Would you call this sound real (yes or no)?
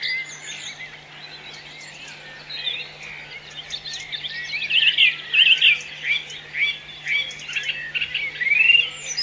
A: yes